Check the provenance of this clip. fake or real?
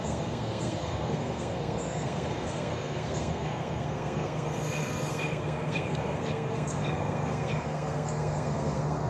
fake